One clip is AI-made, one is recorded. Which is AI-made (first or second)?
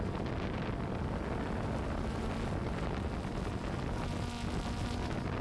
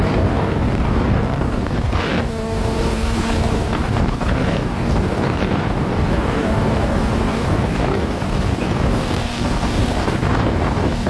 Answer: second